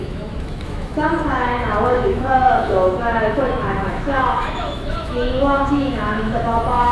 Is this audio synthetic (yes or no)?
yes